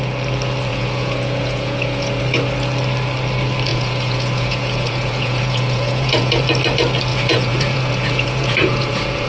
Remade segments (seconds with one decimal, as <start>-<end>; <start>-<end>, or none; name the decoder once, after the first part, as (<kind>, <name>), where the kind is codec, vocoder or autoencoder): 0.7-2.2 (vocoder, Vocos); 3.7-6.4; 7.1-9.3